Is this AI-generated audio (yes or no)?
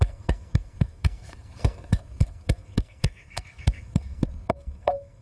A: yes